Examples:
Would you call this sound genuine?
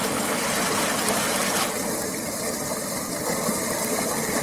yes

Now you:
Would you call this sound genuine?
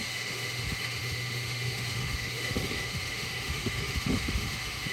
no